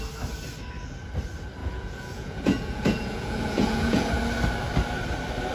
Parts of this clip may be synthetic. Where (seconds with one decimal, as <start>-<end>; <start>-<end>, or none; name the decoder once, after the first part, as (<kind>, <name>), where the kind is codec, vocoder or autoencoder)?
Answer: 1.6-4.1 (vocoder, Vocos)